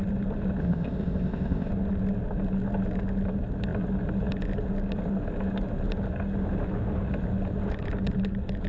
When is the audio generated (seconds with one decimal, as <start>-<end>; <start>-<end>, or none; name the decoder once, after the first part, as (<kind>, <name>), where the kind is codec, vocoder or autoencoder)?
0.6-1.7 (codec, ZipCodec)